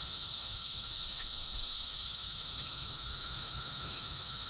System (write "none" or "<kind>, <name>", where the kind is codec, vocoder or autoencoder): autoencoder, DAC-VAE